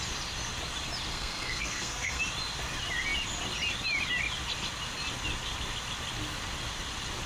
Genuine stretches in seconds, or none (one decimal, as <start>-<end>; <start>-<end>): 0.0-1.1; 2.2-7.3